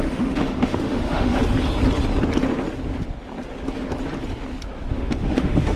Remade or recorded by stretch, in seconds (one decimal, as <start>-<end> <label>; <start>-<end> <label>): 0.0-1.4 remade; 1.4-4.9 recorded; 4.9-5.8 remade